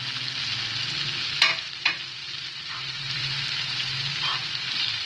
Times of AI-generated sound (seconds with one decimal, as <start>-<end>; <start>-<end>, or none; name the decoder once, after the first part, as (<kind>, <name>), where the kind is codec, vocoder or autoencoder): 2.2-3.4 (vocoder, BigVGAN v2); 4.3-5.1